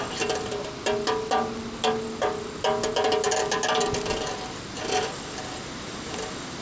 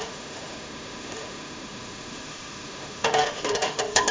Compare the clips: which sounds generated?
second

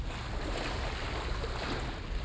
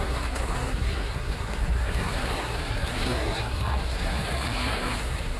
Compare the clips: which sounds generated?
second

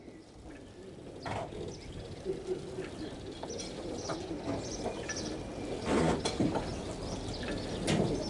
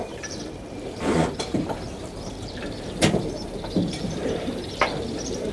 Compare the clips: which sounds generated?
second